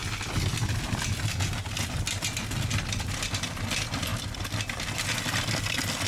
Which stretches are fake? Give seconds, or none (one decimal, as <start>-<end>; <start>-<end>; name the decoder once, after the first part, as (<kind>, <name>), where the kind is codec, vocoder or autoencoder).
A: 4.1-5.2 (vocoder, BigVGAN v2)